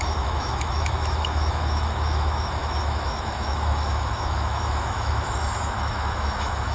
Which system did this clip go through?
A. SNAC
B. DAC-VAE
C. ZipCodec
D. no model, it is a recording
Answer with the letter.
B